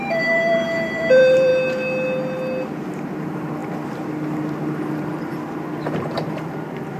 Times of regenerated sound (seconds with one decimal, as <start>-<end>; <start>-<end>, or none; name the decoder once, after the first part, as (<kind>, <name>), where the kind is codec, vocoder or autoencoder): 0.0-1.5 (vocoder, BigVGAN v2); 3.2-3.6; 5.8-7.0